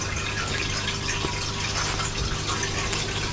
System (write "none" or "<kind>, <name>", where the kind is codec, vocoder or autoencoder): none